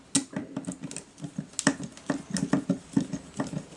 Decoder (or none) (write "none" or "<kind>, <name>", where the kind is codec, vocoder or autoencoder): none